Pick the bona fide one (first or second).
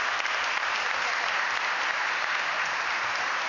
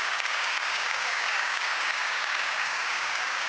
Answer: first